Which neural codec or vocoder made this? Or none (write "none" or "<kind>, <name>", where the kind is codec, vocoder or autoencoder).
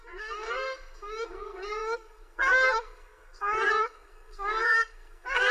codec, SNAC